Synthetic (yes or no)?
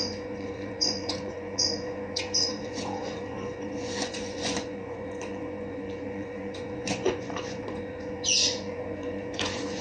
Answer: yes